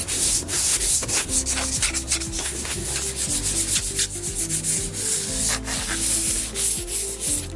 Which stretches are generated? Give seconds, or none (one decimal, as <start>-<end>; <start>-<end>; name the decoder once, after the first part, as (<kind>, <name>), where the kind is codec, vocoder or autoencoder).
0.0-1.3 (codec, SNAC); 2.4-2.9